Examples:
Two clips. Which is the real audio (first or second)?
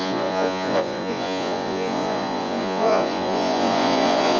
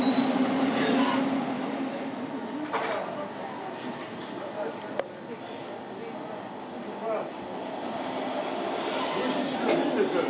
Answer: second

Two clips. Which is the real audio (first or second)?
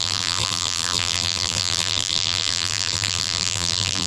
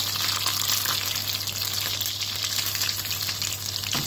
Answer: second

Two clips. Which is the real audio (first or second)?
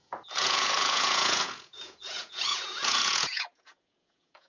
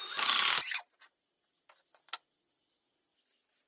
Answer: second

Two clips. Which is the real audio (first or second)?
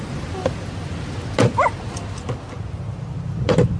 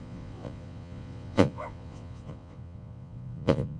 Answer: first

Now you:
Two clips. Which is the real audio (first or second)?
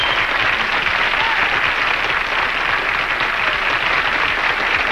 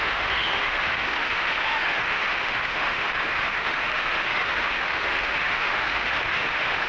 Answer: first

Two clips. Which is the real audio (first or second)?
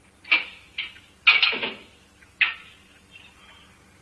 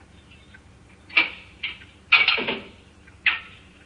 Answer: first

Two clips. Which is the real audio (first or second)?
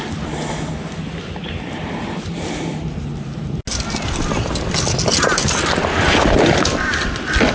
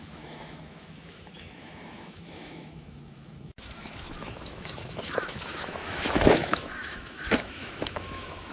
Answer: first